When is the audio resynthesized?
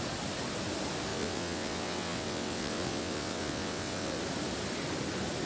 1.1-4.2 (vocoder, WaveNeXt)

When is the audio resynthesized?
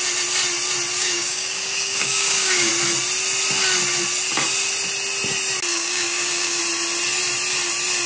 0.9-2.7 (codec, DAC); 5.7-6.6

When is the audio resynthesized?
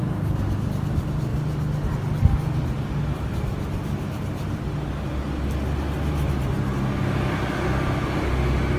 none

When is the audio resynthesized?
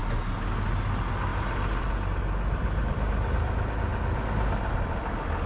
none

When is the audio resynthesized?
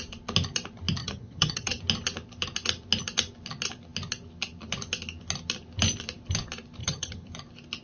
1.0-1.8 (vocoder, HiFi-GAN); 6.8-7.3